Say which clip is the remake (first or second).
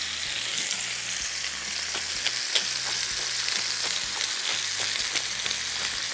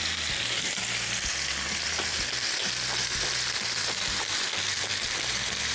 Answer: second